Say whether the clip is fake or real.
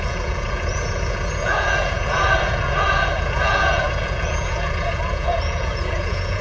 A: fake